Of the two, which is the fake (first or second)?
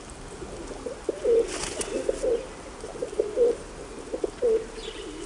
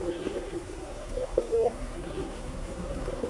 second